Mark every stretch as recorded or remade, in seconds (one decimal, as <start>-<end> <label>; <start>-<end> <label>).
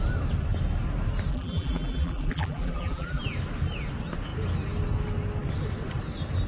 0.0-1.3 recorded; 1.3-3.2 remade; 3.2-6.5 recorded